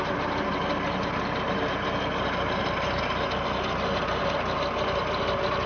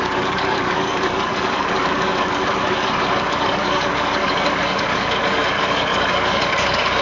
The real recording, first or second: first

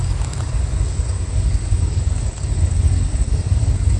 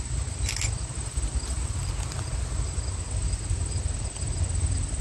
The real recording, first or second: second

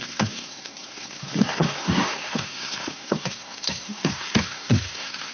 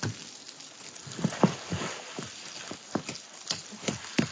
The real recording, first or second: second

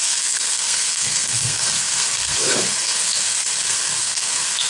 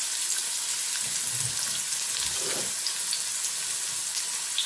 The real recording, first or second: second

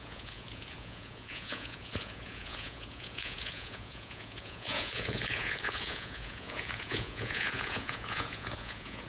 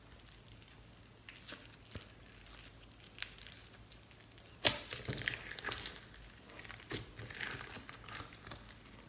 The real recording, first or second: second